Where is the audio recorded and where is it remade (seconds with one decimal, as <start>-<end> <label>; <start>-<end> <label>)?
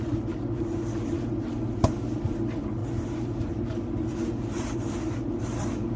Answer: 0.0-2.8 remade; 2.8-4.7 recorded; 4.7-6.0 remade